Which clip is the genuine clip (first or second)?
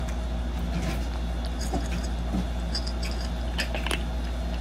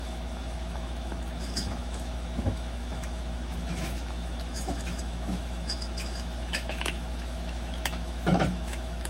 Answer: first